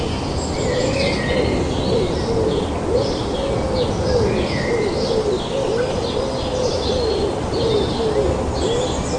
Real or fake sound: real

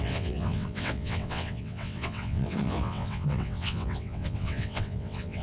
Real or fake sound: fake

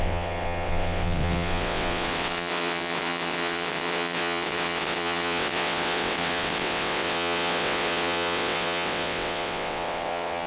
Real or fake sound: fake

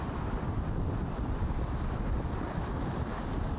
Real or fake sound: real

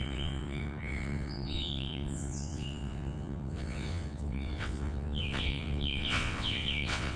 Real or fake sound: fake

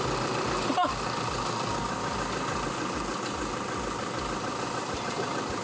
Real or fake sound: real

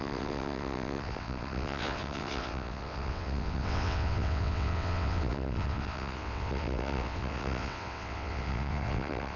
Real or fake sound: fake